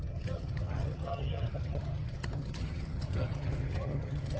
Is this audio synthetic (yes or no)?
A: yes